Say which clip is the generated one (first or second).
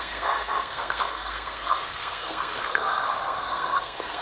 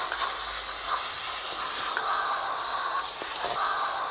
first